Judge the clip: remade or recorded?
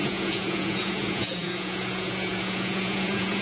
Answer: remade